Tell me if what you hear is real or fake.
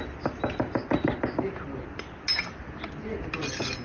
real